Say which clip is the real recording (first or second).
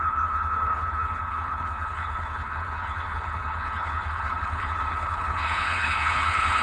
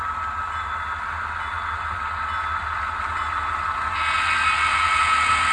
second